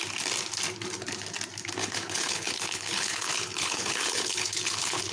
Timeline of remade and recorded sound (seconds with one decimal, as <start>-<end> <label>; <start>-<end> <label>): 0.0-1.8 recorded; 1.8-5.1 remade